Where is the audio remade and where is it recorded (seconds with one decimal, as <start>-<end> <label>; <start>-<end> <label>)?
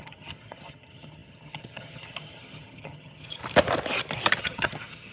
0.0-3.4 remade; 3.4-4.4 recorded; 4.4-5.1 remade